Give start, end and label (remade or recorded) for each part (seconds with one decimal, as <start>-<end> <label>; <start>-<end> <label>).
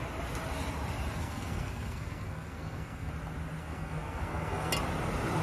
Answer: 0.0-1.2 recorded; 1.2-3.1 remade; 3.1-3.6 recorded; 3.6-4.7 remade; 4.7-5.4 recorded